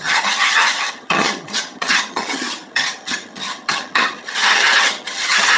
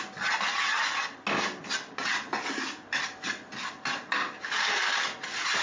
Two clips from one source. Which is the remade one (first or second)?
first